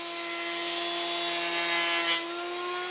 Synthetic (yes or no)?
no